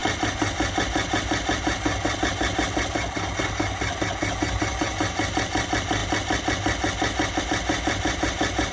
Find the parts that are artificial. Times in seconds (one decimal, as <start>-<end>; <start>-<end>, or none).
none